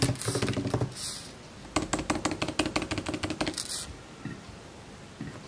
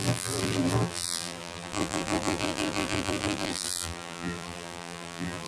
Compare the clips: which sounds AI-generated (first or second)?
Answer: second